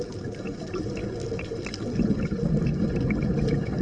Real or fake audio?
real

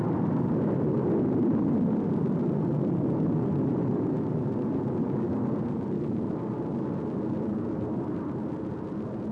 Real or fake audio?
real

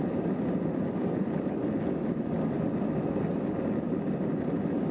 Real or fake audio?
real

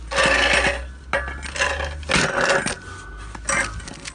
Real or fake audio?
real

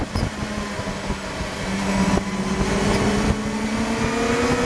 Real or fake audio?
real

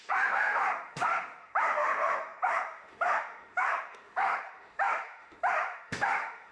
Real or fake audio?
fake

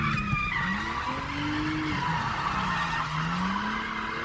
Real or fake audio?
real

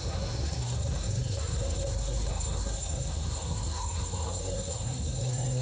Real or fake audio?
fake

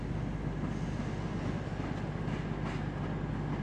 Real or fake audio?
real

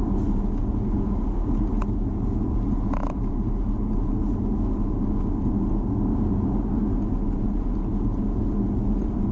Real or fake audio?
real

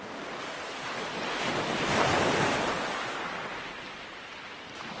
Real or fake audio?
real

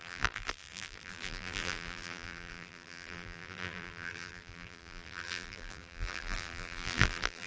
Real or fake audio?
fake